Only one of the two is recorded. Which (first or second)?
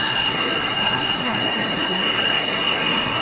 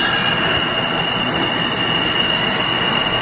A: second